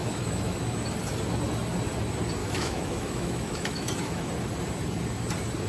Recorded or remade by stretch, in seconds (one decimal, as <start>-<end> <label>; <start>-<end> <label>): 0.0-0.6 remade; 0.6-2.4 recorded; 2.4-4.3 remade; 4.3-5.7 recorded